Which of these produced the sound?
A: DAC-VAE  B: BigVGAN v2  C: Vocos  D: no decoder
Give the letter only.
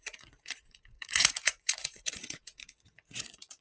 C